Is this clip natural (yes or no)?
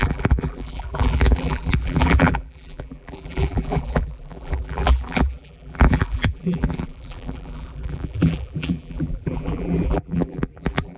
no